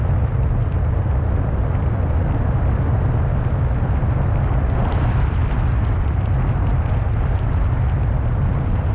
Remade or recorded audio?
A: recorded